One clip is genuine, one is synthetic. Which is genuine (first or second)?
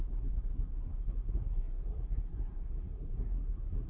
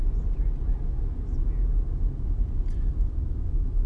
second